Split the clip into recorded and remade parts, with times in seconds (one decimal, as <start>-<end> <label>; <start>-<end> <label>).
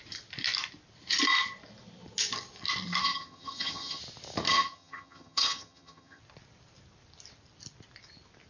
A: 0.0-3.0 recorded; 3.0-4.0 remade; 4.0-4.5 recorded; 4.5-6.2 remade; 6.2-8.5 recorded